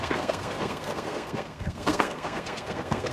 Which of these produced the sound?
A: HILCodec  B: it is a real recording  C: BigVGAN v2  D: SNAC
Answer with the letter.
D